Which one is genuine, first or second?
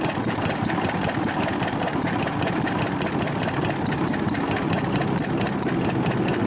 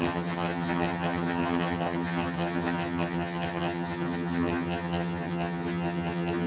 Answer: first